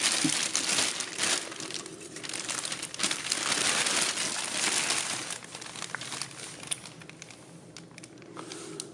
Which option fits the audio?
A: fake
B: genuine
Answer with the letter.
B